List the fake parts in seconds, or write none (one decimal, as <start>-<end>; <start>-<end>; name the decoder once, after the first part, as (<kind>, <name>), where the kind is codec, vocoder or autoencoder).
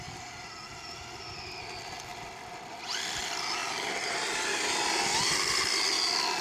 2.1-2.8 (vocoder, BigVGAN v2)